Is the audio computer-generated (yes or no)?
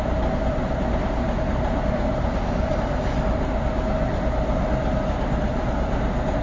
no